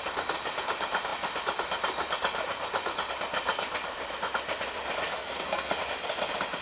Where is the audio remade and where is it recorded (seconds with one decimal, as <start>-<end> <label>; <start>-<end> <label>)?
0.0-5.1 recorded; 5.1-5.8 remade; 5.8-6.6 recorded